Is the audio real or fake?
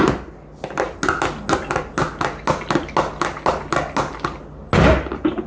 real